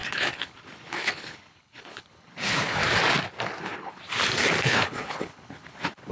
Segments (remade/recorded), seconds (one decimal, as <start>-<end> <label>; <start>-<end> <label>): 0.0-2.8 remade; 2.8-3.6 recorded; 3.6-4.0 remade; 4.0-4.6 recorded; 4.6-6.1 remade